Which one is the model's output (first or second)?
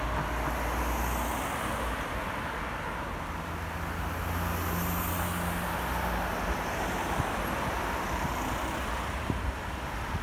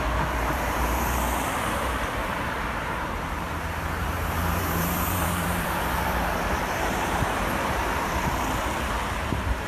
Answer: second